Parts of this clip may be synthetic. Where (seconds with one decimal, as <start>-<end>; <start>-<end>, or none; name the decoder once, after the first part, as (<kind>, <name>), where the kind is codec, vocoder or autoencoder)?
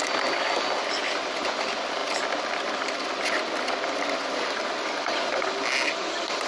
none